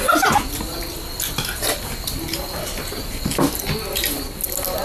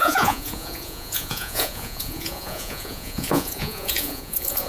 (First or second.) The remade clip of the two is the second